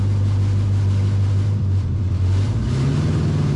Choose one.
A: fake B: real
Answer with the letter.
B